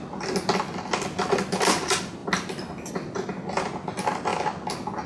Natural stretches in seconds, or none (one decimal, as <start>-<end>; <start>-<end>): 0.0-5.1